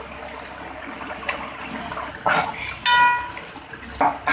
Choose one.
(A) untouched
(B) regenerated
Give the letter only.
A